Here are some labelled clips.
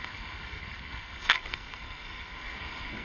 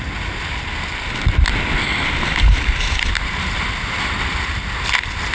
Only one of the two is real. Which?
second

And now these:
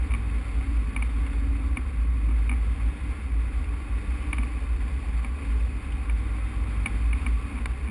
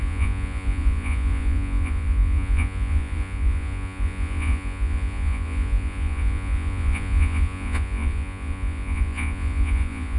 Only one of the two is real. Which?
first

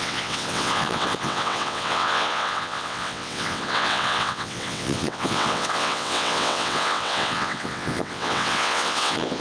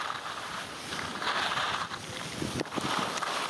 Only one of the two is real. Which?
second